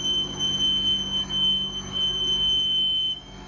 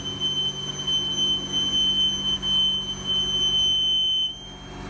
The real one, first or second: second